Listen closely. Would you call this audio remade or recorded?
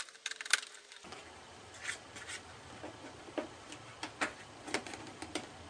recorded